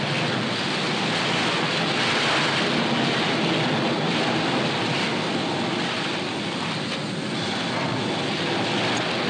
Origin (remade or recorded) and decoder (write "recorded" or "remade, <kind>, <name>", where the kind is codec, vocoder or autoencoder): recorded